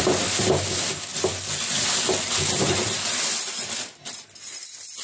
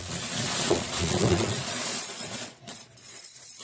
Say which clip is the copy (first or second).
second